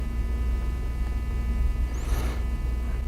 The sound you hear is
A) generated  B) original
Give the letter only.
B